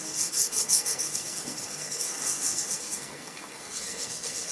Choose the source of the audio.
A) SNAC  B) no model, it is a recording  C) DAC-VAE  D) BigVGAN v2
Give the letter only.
A